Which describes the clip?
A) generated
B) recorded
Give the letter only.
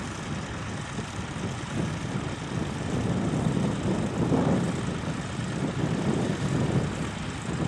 B